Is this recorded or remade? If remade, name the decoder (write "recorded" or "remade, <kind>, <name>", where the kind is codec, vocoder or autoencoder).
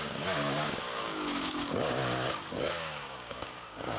remade, codec, DAC